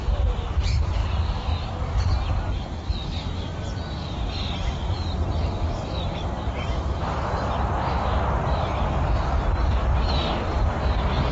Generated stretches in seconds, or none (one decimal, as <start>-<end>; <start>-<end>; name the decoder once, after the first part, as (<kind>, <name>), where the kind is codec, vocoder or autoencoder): none